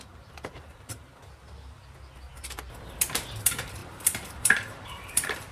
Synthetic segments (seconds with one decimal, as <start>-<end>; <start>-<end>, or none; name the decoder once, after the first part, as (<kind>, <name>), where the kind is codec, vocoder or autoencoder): 0.0-1.2 (vocoder, BigVGAN v2); 3.4-5.5